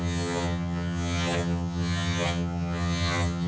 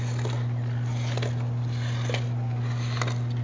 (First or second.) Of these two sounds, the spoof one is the first